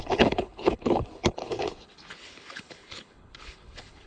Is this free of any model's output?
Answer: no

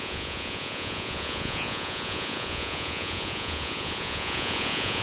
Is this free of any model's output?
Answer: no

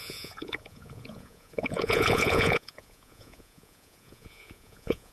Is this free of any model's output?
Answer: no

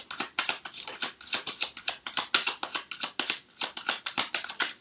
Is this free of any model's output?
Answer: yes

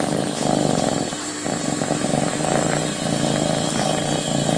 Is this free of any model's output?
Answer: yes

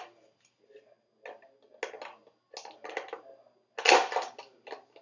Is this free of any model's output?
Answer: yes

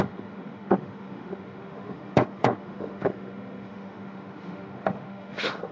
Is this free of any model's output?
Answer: no